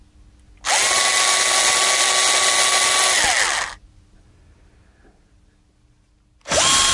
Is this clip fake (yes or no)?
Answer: no